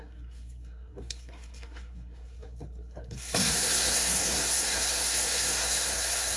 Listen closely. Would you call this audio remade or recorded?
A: remade